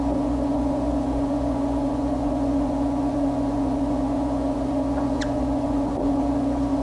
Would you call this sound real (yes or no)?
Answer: no